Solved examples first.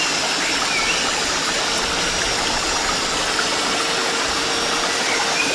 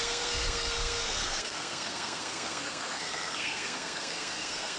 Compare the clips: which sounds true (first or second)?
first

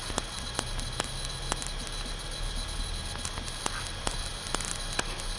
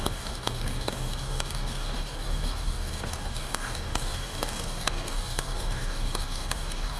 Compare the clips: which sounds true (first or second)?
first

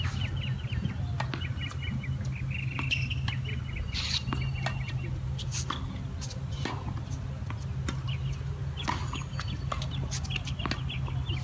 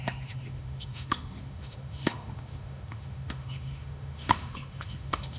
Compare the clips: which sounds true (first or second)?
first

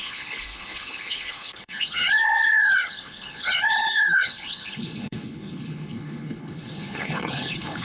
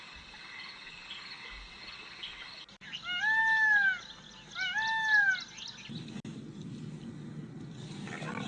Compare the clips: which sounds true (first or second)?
second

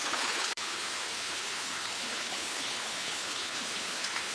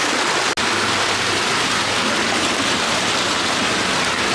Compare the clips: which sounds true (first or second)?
second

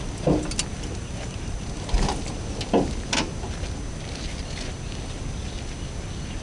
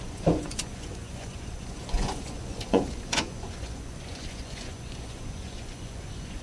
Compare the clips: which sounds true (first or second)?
first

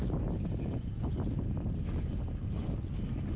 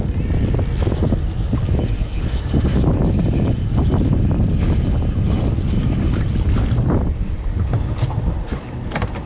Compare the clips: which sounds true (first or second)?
first